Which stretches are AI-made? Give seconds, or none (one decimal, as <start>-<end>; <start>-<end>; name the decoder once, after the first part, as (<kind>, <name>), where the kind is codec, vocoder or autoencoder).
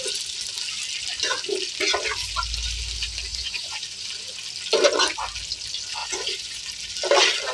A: 3.3-3.8 (vocoder, Vocos); 6.0-6.6